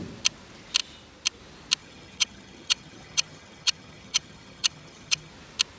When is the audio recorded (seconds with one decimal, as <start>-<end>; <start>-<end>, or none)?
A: 0.0-1.8; 5.3-5.8